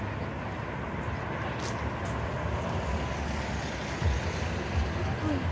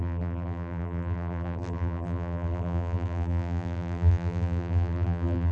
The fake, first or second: second